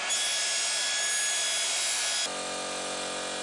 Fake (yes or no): no